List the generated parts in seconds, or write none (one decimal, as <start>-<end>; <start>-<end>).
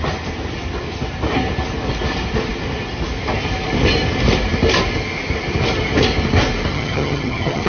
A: 6.7-7.7